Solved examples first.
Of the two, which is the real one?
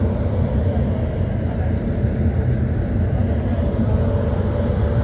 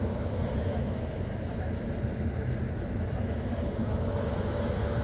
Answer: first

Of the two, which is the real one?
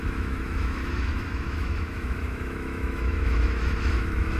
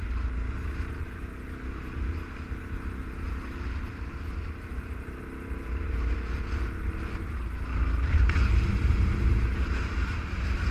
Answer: second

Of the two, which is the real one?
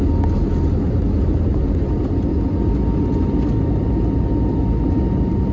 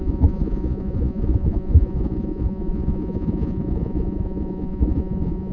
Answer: first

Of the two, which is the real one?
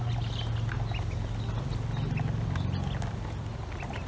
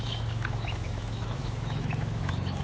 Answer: first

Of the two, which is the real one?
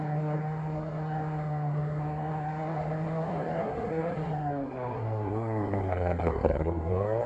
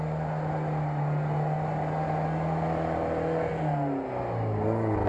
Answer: second